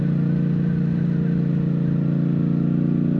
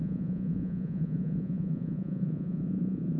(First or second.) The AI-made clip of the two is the second